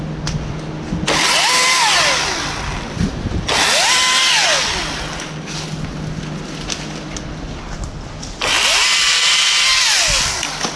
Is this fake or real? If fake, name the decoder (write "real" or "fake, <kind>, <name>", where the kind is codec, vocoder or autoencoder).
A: real